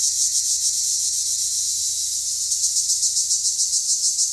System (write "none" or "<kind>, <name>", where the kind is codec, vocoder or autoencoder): none